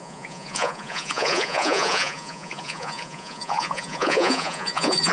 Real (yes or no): no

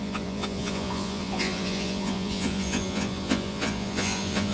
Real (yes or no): no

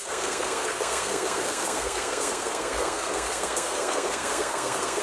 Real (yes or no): no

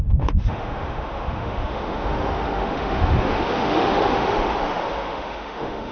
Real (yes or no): no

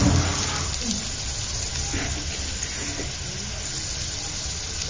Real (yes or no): yes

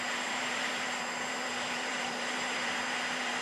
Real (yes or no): no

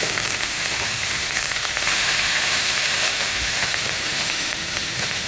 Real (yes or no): no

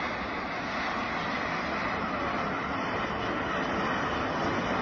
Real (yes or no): yes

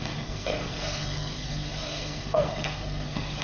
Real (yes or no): no